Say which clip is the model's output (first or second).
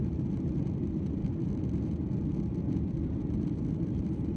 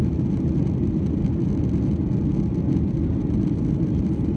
first